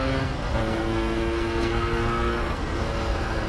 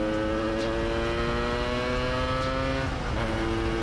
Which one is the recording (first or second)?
second